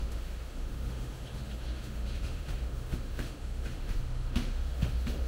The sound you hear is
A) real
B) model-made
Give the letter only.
B